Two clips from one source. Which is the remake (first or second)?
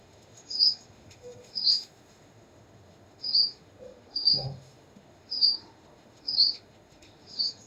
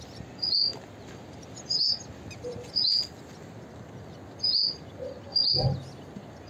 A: first